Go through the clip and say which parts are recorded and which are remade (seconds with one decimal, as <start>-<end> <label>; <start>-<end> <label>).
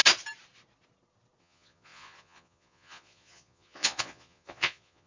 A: 0.0-1.4 recorded; 1.4-5.1 remade